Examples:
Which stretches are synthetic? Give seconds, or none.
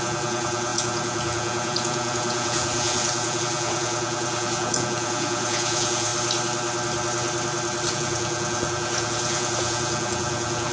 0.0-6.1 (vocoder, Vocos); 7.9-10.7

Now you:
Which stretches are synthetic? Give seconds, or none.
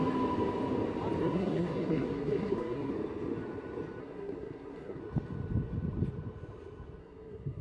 1.2-2.9 (codec, SNAC); 4.0-5.0; 7.0-7.6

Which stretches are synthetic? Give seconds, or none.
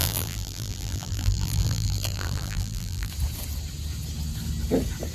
0.0-3.1 (vocoder, BigVGAN v2)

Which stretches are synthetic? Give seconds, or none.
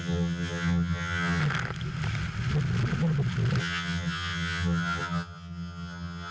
0.0-1.4 (vocoder, HiFi-GAN); 3.6-6.3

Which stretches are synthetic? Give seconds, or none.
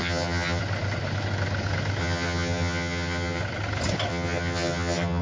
0.0-0.6 (vocoder, HiFi-GAN); 2.0-3.4; 4.1-5.2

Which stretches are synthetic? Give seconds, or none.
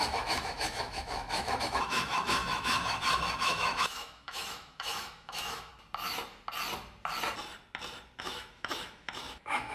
0.0-5.7 (autoencoder, DAC-VAE); 8.2-9.7